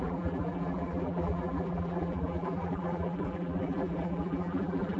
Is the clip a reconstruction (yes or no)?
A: yes